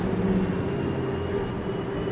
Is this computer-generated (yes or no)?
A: no